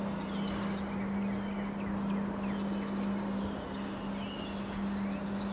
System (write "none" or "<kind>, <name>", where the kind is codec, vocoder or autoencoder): none